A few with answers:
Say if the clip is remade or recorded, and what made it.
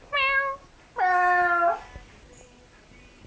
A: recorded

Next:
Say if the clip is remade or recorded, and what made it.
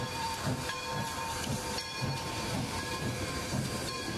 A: remade, vocoder, BigVGAN v2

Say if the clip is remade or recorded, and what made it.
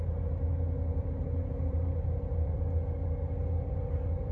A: recorded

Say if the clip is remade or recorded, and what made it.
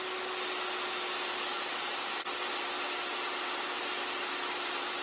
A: recorded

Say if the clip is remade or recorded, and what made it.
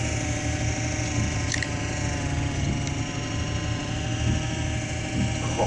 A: recorded